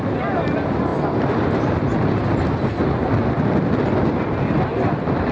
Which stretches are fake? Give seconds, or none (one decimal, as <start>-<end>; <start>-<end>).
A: none